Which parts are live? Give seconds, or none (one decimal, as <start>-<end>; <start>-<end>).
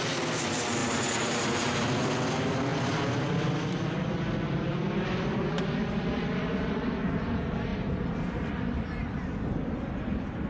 0.0-0.8; 1.8-7.7; 8.5-10.5